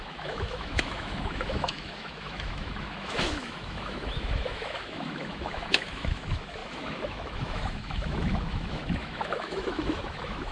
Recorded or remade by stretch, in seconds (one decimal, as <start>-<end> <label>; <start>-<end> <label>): 0.0-10.5 remade

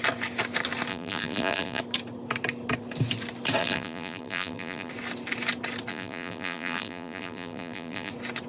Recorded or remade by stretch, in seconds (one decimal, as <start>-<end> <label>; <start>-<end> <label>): 0.0-0.9 recorded; 0.9-1.8 remade; 1.8-3.6 recorded; 3.6-4.9 remade; 4.9-5.9 recorded; 5.9-8.1 remade; 8.1-8.5 recorded

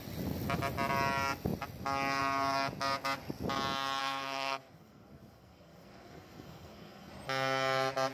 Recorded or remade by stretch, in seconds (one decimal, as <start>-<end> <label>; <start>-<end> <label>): 0.0-4.0 recorded; 4.0-7.1 remade; 7.1-8.1 recorded

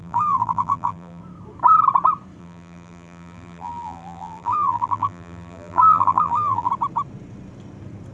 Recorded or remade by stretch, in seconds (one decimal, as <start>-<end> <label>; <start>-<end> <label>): 0.0-1.2 remade; 1.2-2.4 recorded; 2.4-6.7 remade; 6.7-8.1 recorded

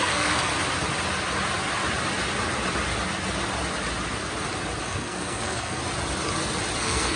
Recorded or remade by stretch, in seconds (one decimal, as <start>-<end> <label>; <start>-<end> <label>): 0.0-0.5 remade; 0.5-4.8 recorded; 4.8-5.8 remade; 5.8-6.8 recorded; 6.8-7.2 remade

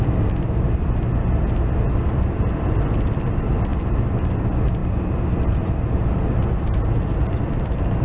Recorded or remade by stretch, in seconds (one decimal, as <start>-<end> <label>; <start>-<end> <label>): 0.0-8.0 recorded

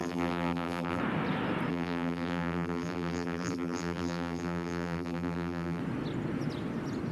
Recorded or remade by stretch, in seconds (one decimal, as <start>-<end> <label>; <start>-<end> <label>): 0.0-1.0 remade; 1.0-1.7 recorded; 1.7-5.8 remade; 5.8-7.1 recorded

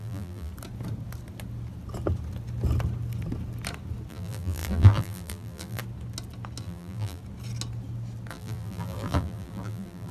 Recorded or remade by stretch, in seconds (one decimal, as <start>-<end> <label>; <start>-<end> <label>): 0.0-0.5 remade; 0.5-4.1 recorded; 4.1-5.8 remade; 5.8-6.6 recorded; 6.6-7.2 remade; 7.2-8.3 recorded; 8.3-10.1 remade